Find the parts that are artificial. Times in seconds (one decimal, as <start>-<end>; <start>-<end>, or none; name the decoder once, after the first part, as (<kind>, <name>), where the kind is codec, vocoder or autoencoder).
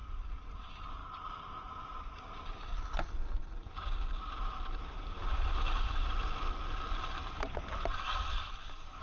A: 5.2-6.6 (vocoder, BigVGAN v2)